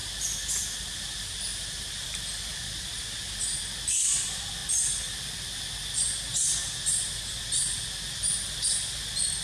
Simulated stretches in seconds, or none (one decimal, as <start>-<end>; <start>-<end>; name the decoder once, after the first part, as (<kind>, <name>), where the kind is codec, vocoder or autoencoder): 0.0-3.4 (vocoder, BigVGAN v2)